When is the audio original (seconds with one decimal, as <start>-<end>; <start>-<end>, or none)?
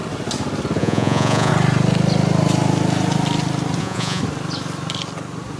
0.0-0.8; 1.5-3.8; 4.2-5.6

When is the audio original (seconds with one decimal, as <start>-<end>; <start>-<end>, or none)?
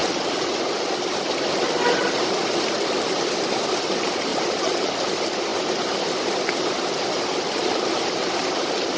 0.0-4.3; 4.9-9.0